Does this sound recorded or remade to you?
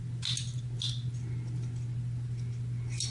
recorded